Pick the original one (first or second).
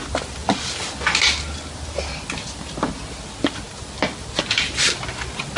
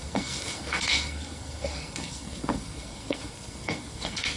first